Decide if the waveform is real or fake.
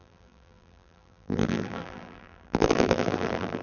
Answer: fake